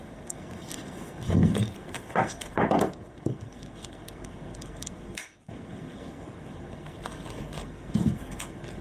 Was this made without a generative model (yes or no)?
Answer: no